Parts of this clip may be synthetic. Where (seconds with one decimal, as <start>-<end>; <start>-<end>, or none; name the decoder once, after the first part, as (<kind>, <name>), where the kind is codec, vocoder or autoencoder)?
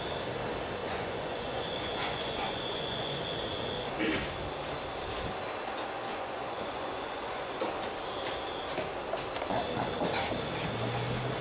0.8-3.2 (vocoder, Vocos); 6.1-7.6